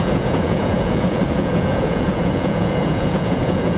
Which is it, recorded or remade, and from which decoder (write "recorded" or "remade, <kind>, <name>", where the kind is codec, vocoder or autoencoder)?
remade, vocoder, Vocos